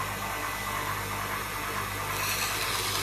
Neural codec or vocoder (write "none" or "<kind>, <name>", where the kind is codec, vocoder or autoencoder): none